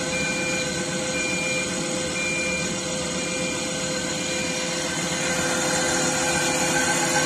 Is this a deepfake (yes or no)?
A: no